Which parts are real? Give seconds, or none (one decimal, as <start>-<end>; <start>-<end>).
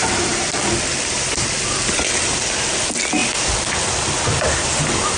0.0-3.2